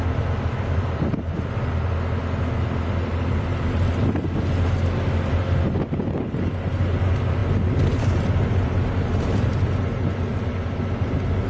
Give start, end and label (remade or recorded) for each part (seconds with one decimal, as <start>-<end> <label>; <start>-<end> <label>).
0.0-3.1 recorded; 3.1-4.2 remade; 4.2-11.5 recorded

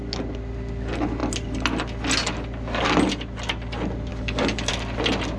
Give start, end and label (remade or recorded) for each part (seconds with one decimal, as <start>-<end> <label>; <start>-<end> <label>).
0.0-4.1 recorded; 4.1-4.7 remade; 4.7-5.4 recorded

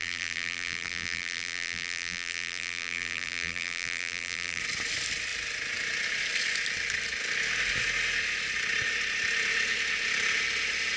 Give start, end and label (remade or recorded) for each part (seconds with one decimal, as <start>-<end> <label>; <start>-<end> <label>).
0.0-4.6 remade; 4.6-11.0 recorded

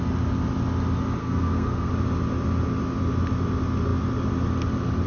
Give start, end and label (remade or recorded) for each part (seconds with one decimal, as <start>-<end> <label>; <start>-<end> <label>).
0.0-1.2 recorded; 1.2-1.9 remade; 1.9-5.1 recorded